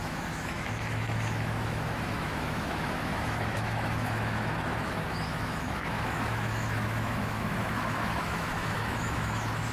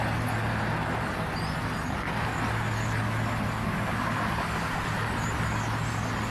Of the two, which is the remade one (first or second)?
first